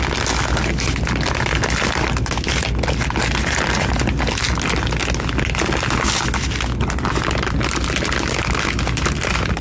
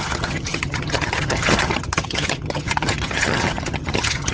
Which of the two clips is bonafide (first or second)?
first